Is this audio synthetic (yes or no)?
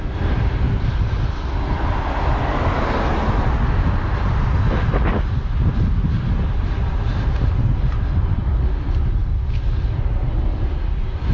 no